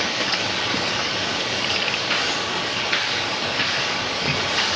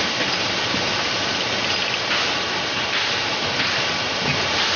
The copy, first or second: first